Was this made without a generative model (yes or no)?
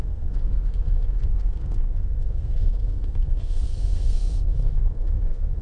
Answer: no